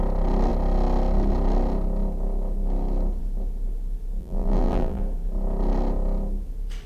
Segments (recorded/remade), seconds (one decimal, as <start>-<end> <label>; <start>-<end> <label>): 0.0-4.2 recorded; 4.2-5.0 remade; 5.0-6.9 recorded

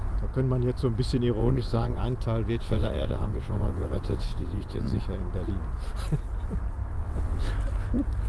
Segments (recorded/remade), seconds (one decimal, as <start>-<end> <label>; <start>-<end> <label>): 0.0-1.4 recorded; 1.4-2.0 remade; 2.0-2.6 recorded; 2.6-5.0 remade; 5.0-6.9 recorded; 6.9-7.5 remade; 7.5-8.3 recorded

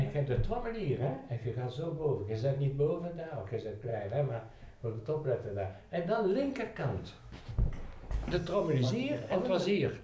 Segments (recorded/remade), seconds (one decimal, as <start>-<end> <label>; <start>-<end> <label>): 0.0-3.9 recorded; 3.9-5.8 remade; 5.8-6.8 recorded; 6.8-7.4 remade; 7.4-10.0 recorded